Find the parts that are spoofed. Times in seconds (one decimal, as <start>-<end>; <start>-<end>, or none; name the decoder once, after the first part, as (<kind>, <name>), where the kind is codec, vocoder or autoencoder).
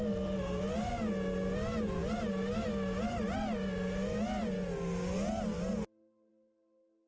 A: none